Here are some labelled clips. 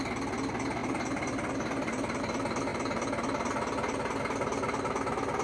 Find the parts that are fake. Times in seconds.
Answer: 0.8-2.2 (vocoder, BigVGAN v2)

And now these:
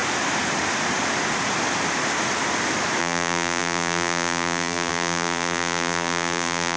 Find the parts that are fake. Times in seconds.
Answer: 3.0-6.8 (vocoder, BigVGAN v2)

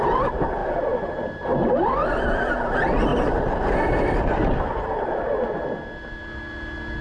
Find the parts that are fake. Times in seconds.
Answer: 0.6-2.4 (vocoder, BigVGAN v2); 3.1-4.4

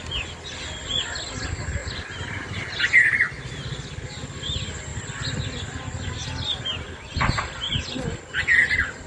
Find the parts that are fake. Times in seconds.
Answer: 1.8-2.8 (vocoder, BigVGAN v2)

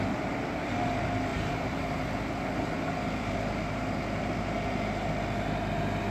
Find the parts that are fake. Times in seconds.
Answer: 1.3-1.8 (vocoder, BigVGAN v2)

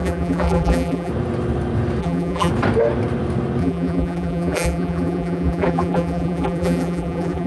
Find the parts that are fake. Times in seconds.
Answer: 0.0-1.1 (vocoder, BigVGAN v2); 2.0-2.5; 3.6-7.5

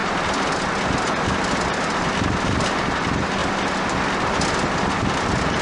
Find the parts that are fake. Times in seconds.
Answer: 0.0-3.4 (vocoder, BigVGAN v2)

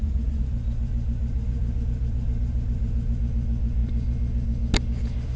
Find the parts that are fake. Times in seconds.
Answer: 0.0-3.2 (vocoder, BigVGAN v2)